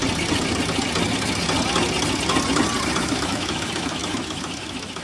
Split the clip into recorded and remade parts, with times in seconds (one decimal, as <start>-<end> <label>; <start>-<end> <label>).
0.0-3.0 recorded; 3.0-5.0 remade